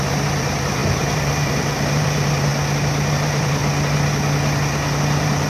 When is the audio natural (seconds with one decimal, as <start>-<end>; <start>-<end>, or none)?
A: 2.5-3.1; 3.6-5.0